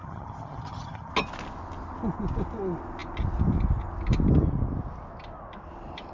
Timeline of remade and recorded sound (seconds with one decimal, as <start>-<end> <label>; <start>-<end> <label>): 0.0-1.1 remade; 1.1-6.1 recorded